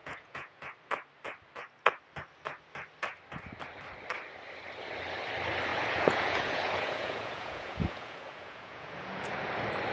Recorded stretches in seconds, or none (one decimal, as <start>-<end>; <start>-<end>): 0.6-5.7; 9.5-9.9